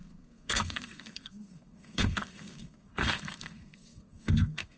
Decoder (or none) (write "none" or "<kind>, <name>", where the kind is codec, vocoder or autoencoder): codec, SNAC